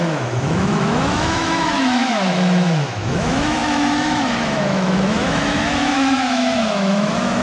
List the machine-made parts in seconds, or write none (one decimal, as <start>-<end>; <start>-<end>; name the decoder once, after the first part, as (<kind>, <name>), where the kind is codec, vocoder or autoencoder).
0.0-7.4 (autoencoder, DAC-VAE)